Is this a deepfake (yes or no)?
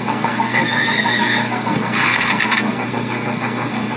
yes